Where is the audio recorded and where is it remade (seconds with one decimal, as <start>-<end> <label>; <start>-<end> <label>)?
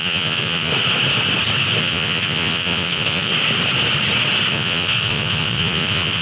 0.0-0.7 remade; 0.7-1.8 recorded; 1.8-3.3 remade; 3.3-4.5 recorded; 4.5-6.2 remade